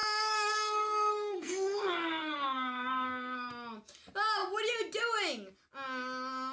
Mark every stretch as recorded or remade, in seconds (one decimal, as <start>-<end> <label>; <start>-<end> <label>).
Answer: 0.0-3.5 remade; 3.5-6.5 recorded